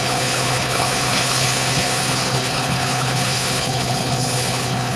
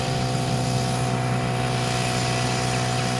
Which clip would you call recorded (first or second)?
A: second